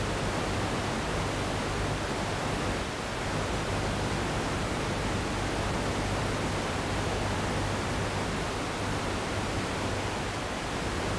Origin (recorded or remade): recorded